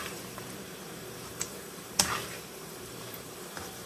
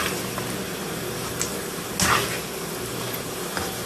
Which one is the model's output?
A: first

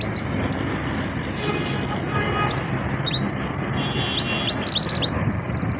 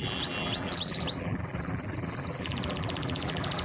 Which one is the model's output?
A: second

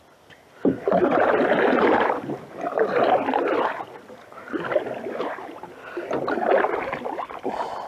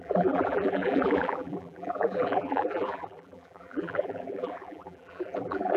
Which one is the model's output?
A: second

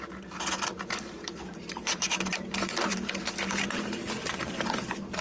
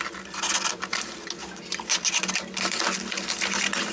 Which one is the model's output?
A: first